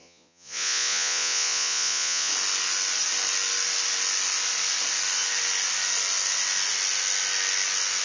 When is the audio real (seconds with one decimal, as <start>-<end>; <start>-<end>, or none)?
2.3-8.0